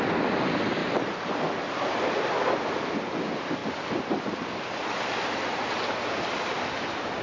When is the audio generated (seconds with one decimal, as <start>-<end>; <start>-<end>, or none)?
0.8-1.7; 3.6-6.6

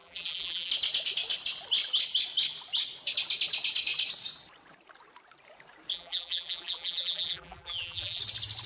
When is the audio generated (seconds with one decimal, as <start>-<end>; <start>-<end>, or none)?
0.0-0.7; 5.9-8.2

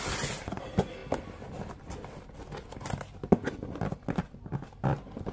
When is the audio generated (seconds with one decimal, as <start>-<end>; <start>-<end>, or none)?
none

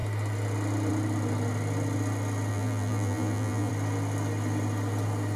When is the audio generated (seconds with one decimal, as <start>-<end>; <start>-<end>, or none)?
2.5-3.7

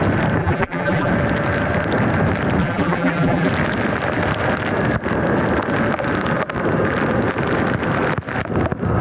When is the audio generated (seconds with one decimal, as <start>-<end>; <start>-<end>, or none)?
0.4-1.1; 2.6-3.5

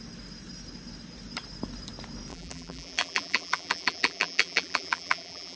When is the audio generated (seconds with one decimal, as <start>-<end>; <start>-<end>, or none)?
2.3-5.6